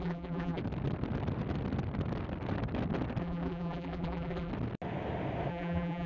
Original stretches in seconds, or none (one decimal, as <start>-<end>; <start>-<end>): 0.6-3.2; 4.5-5.5